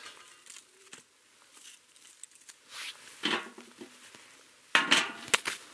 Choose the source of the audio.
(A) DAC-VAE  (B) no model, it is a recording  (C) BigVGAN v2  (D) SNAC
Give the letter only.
B